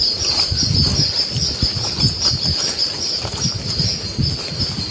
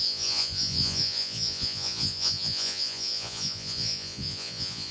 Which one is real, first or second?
first